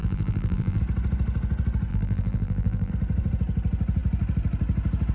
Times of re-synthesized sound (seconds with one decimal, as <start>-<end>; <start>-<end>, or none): 0.0-0.8; 1.9-2.9